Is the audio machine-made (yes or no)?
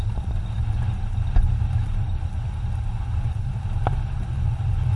no